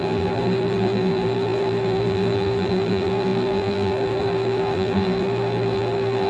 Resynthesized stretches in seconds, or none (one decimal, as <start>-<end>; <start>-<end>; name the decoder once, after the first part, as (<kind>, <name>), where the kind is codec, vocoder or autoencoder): 0.0-6.3 (vocoder, BigVGAN v2)